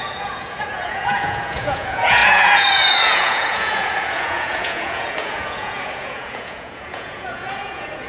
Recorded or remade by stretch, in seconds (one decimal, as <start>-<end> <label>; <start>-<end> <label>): 0.0-8.1 remade